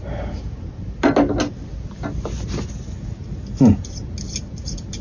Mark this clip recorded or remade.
recorded